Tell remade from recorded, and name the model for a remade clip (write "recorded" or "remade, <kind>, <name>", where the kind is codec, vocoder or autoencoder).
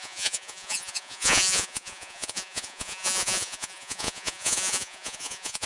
remade, vocoder, Vocos